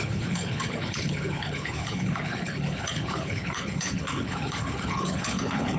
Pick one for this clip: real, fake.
fake